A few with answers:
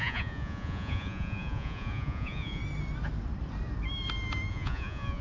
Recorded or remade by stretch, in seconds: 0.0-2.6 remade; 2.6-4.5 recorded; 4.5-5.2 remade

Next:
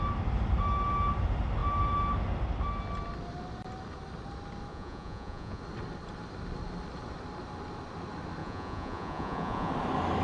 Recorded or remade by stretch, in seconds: 0.0-4.7 recorded; 4.7-5.6 remade; 5.6-8.4 recorded; 8.4-9.7 remade; 9.7-10.2 recorded